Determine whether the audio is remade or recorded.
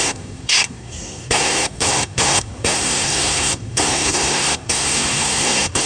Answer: remade